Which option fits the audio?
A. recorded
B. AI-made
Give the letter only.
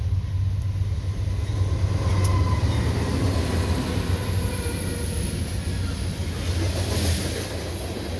A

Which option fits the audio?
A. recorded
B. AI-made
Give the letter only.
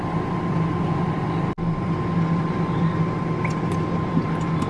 A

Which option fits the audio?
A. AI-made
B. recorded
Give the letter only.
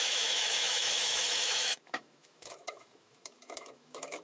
A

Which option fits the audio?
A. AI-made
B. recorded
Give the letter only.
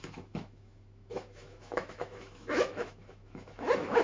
A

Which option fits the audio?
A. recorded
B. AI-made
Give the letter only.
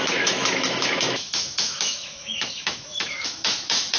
B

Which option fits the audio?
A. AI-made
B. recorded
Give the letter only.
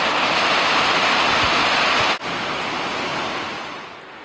B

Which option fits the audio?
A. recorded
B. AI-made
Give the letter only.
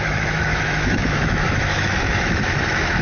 B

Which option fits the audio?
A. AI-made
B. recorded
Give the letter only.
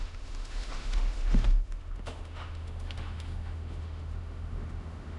A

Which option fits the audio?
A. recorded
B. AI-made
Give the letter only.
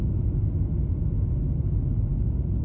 A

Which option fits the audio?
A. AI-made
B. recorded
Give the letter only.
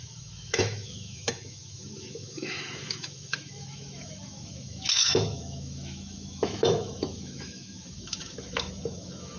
A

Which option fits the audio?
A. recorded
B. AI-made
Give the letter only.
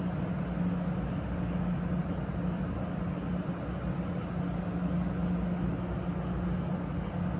A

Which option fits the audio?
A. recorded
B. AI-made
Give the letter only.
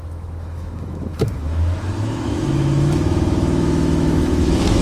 B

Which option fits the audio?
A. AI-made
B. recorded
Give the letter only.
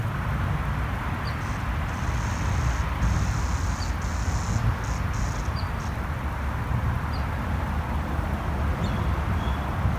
B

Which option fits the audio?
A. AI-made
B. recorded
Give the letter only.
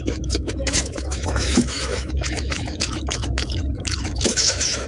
A